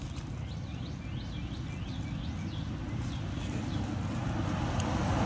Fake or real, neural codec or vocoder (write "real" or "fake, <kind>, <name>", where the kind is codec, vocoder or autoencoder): real